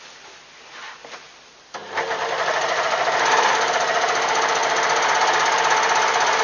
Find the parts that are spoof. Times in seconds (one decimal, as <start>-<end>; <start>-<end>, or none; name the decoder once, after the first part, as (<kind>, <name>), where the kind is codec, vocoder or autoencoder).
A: none